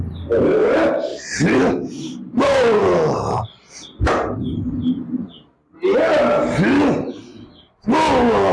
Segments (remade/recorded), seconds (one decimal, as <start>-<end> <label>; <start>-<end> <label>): 0.0-1.1 recorded; 1.1-1.7 remade; 1.7-2.8 recorded; 2.8-4.7 remade; 4.7-8.5 recorded